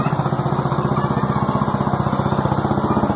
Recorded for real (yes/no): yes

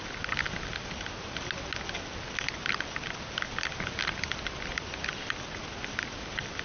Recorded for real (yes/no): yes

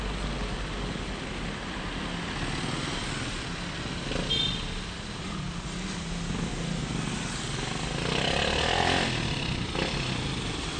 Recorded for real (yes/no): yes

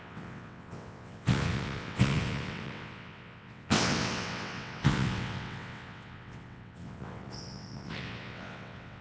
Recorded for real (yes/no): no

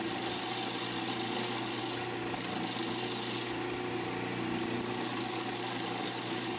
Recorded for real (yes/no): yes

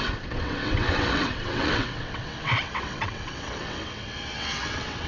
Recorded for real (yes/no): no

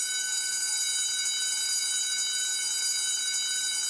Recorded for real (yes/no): yes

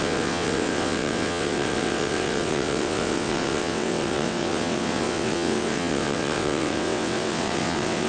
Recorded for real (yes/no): no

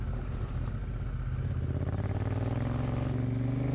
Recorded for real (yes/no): yes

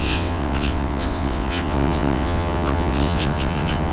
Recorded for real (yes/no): no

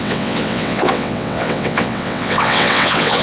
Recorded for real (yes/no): no